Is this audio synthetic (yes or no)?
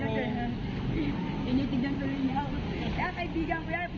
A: no